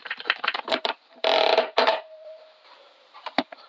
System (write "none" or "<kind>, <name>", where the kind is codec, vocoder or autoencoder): vocoder, BigVGAN v2